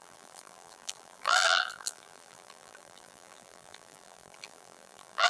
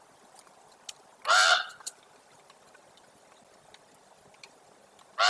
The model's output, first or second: first